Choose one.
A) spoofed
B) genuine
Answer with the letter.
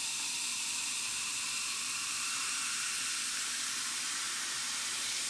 A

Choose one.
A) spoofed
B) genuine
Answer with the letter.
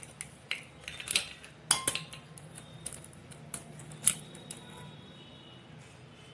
B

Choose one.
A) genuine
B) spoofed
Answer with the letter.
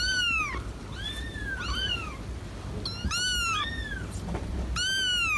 A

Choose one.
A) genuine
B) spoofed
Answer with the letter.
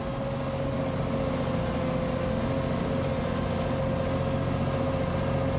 A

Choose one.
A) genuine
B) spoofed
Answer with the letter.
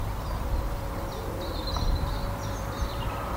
A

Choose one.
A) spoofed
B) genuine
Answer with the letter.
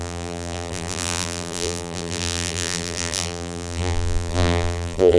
A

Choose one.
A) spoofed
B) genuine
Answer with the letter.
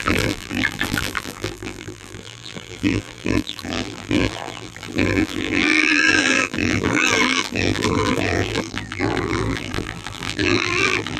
A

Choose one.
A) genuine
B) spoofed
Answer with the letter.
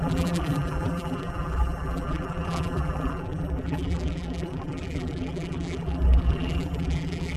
B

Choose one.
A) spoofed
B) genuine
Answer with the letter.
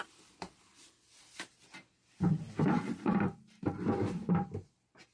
A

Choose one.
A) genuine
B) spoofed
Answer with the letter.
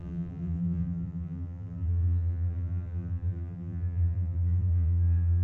B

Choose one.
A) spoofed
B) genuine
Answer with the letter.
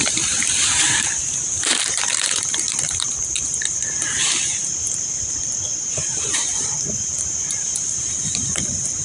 A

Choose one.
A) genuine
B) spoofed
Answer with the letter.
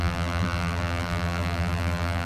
B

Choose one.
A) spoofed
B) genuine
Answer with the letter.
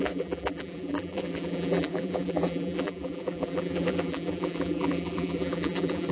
A